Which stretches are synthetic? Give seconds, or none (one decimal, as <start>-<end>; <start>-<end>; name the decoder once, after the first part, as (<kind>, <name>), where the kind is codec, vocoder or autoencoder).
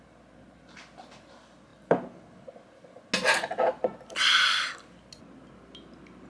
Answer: none